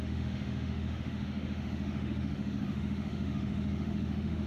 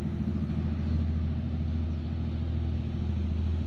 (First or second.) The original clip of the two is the second